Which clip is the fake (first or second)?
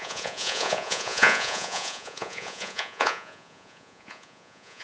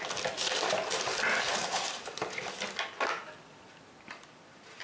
first